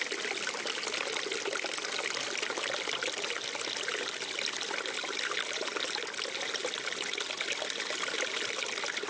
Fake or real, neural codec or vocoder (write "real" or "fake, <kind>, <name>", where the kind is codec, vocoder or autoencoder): real